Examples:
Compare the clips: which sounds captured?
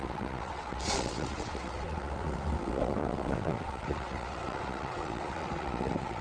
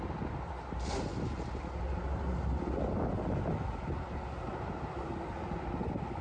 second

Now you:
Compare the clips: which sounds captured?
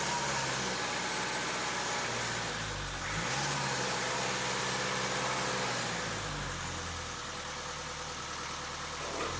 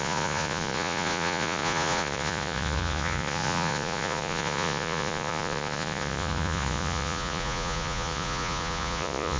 first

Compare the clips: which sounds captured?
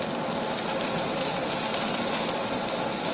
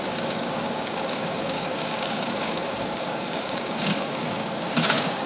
first